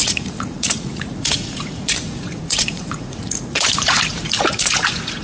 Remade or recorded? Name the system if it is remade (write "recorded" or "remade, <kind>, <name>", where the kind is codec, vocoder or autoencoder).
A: remade, vocoder, Vocos